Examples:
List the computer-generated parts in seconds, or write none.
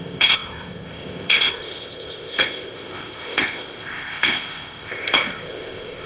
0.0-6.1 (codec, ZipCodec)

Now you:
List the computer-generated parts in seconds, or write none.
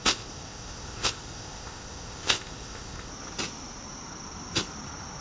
0.0-3.1 (codec, ZipCodec)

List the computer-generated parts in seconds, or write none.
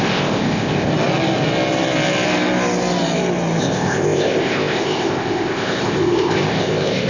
0.0-0.9 (codec, ZipCodec); 3.6-7.1